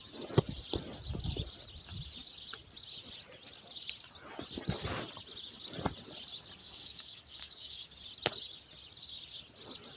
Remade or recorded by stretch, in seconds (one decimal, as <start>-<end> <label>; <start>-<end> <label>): 0.0-6.6 recorded; 6.6-7.9 remade; 7.9-10.0 recorded